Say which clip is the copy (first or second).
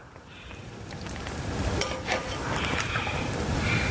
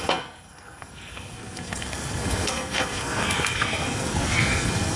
second